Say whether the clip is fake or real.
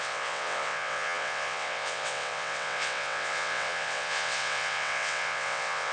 fake